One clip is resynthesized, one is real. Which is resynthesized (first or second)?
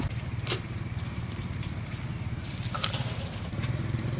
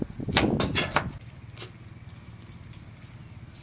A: first